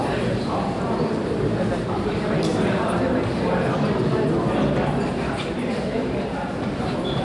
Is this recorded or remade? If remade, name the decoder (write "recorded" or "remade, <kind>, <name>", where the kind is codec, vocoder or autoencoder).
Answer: remade, vocoder, BigVGAN v2